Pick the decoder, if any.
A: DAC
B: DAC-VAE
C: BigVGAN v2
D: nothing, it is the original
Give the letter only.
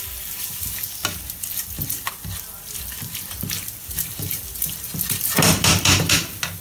D